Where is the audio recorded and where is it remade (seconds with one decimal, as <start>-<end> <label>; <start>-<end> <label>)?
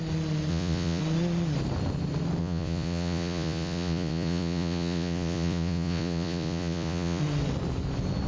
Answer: 0.0-0.5 recorded; 0.5-1.0 remade; 1.0-2.4 recorded; 2.4-7.2 remade; 7.2-8.3 recorded